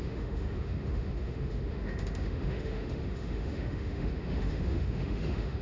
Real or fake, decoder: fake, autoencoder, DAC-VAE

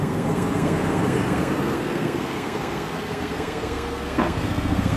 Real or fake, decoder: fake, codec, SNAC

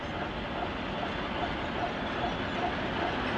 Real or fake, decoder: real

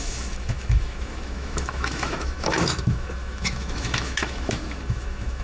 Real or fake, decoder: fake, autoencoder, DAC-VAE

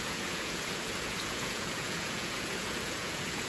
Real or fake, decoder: fake, vocoder, Vocos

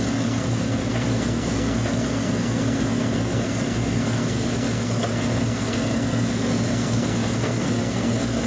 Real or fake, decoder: fake, codec, SNAC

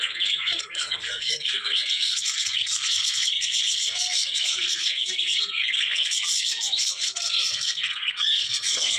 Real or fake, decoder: fake, codec, SNAC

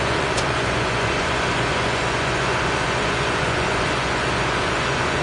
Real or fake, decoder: fake, vocoder, Vocos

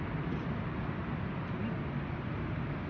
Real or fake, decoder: real